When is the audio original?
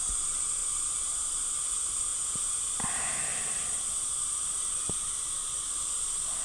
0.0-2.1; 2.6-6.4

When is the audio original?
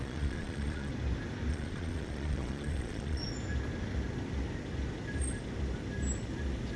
0.9-1.5; 3.2-6.8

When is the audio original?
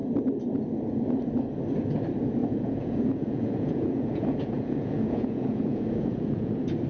0.0-2.4; 6.5-6.9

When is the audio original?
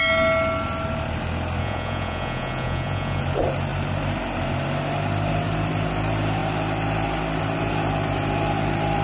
0.0-1.6; 3.2-9.0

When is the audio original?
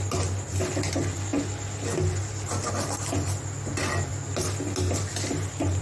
0.0-5.8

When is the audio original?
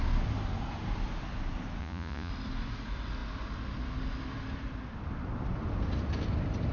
0.0-1.8; 2.3-6.7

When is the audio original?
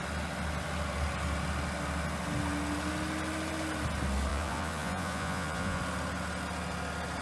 0.0-4.3; 5.8-7.2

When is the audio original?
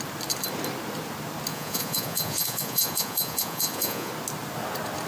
0.0-1.5; 4.1-5.1